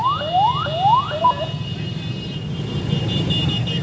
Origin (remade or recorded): remade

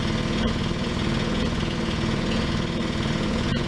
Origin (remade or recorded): remade